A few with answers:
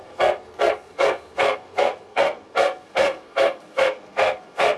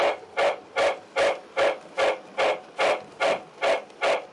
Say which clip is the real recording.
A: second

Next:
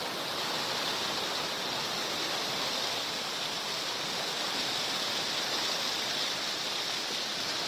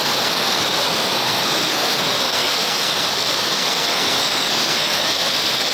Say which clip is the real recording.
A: first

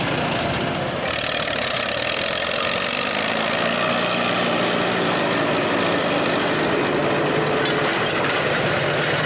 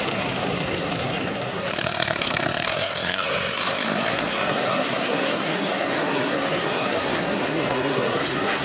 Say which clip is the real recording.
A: first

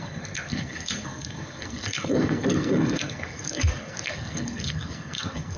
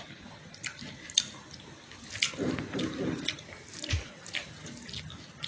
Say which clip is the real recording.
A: second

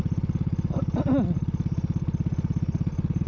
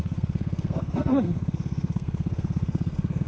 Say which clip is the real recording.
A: first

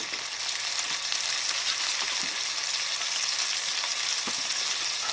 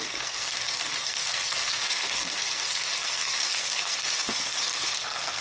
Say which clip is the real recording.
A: first